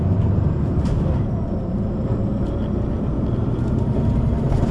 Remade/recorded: remade